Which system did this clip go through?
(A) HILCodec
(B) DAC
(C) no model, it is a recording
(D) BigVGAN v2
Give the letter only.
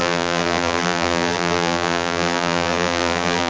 D